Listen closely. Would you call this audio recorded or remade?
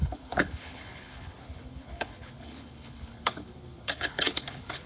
remade